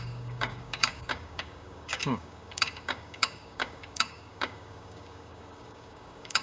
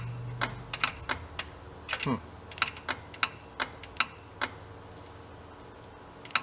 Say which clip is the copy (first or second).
first